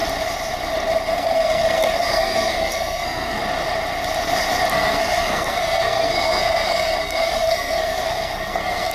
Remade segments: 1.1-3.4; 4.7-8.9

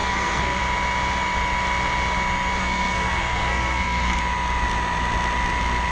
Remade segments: 0.0-0.6; 2.6-4.2

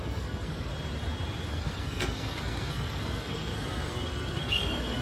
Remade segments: 0.0-0.7; 1.5-5.0

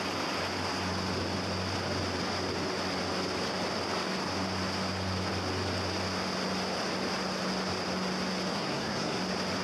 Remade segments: 8.5-9.2

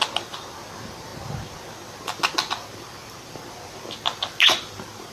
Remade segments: none

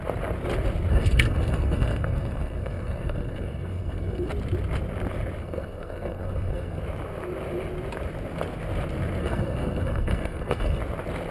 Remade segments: 0.9-4.3; 5.4-6.8; 9.2-10.8

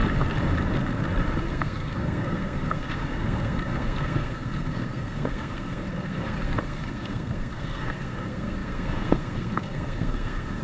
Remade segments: 1.4-10.6